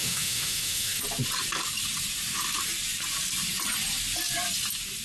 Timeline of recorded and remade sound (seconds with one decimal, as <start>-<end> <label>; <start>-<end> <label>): 0.0-1.0 remade; 1.0-5.0 recorded

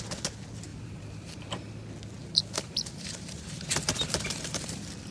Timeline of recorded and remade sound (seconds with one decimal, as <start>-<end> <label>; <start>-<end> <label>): 0.0-0.7 recorded; 0.7-1.4 remade; 1.4-2.2 recorded; 2.2-4.5 remade; 4.5-5.1 recorded

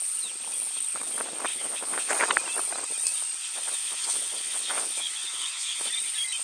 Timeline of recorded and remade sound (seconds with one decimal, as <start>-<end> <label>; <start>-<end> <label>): 0.0-1.5 recorded; 1.5-2.1 remade; 2.1-3.4 recorded; 3.4-5.9 remade; 5.9-6.4 recorded

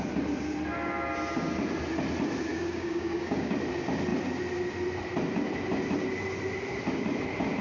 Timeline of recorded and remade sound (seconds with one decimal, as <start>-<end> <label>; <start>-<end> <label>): 0.0-2.5 recorded; 2.5-3.5 remade; 3.5-7.6 recorded

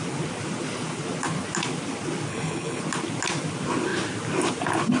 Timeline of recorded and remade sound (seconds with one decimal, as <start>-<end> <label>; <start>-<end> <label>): 0.0-2.3 recorded; 2.3-2.8 remade; 2.8-5.0 recorded